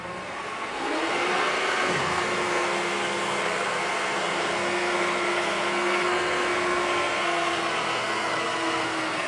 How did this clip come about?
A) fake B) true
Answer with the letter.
A